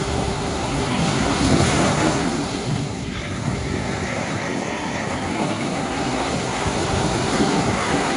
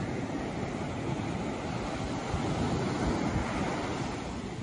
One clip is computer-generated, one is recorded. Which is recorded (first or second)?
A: second